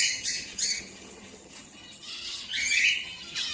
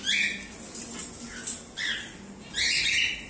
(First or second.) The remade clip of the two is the first